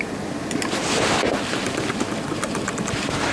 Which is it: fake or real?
real